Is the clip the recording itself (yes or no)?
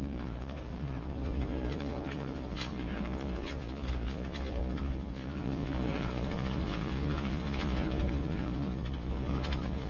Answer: no